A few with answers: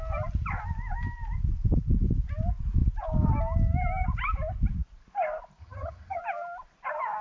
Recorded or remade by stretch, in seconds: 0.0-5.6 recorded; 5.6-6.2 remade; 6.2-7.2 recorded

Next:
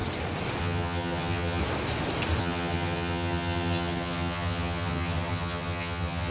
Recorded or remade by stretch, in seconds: 0.0-0.6 recorded; 0.6-1.6 remade; 1.6-2.4 recorded; 2.4-6.3 remade

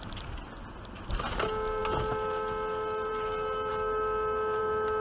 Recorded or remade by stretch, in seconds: 0.0-5.0 recorded